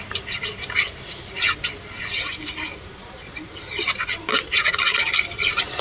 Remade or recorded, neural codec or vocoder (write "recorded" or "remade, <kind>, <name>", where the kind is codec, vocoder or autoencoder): recorded